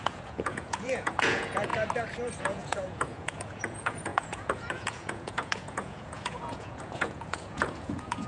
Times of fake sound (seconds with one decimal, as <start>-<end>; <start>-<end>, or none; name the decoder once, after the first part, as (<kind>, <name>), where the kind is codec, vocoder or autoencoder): 0.0-1.7 (vocoder, Vocos); 2.4-8.3